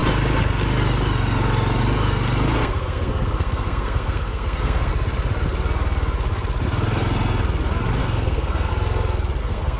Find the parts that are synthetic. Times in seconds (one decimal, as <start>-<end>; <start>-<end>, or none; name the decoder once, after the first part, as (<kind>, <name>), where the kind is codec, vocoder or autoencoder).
2.6-4.9 (codec, SNAC); 8.0-8.7; 9.4-9.8